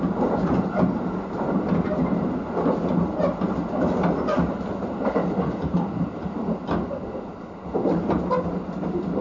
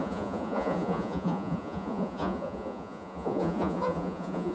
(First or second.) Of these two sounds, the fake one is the second